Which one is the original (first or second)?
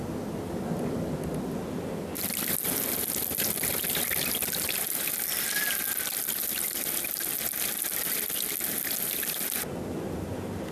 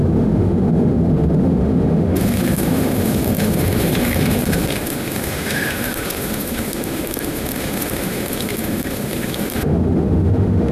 first